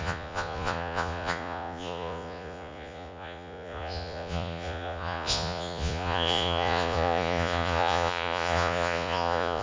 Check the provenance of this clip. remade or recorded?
remade